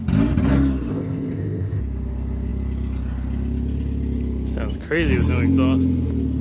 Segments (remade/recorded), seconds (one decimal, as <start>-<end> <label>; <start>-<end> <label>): 0.0-0.9 recorded; 0.9-1.8 remade; 1.8-6.4 recorded